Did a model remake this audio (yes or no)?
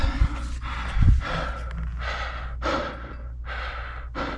no